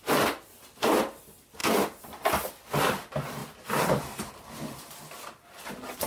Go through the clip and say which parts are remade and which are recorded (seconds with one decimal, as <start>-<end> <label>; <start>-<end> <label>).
0.0-6.1 recorded